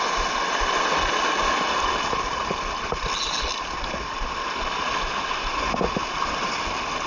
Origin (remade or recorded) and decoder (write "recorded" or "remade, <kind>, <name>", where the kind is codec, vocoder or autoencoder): recorded